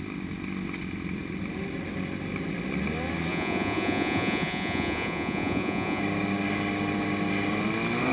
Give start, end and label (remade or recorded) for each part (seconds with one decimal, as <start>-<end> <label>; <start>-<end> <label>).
0.0-3.3 recorded; 3.3-6.0 remade; 6.0-8.1 recorded